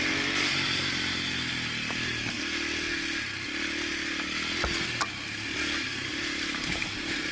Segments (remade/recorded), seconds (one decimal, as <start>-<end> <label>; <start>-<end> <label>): 0.0-2.2 remade; 2.2-5.3 recorded; 5.3-7.3 remade